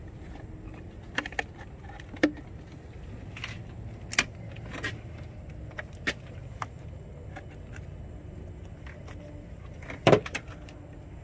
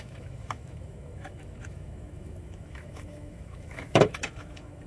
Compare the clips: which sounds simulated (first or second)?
second